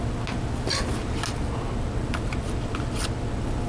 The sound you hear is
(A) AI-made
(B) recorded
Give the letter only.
B